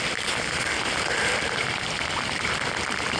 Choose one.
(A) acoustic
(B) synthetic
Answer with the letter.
A